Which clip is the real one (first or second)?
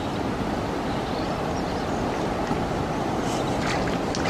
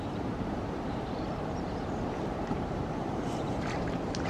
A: first